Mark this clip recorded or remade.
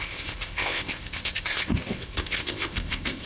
remade